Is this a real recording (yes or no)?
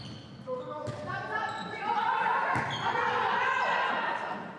yes